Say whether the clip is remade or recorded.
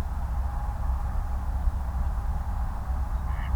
recorded